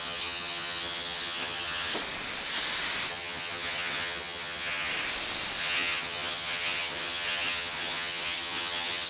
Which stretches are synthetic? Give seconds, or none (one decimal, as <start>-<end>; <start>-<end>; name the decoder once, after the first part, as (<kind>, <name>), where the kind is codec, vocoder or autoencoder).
0.0-1.9 (vocoder, HiFi-GAN); 3.1-4.9; 5.6-9.1